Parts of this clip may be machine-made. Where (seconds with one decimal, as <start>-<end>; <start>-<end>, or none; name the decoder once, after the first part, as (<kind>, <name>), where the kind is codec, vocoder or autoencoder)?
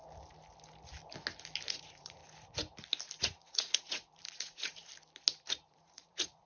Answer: 1.7-2.2 (vocoder, Vocos); 3.2-4.9; 5.7-6.5